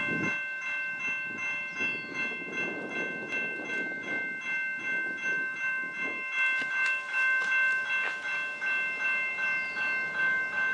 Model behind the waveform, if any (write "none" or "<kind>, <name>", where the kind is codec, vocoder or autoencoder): none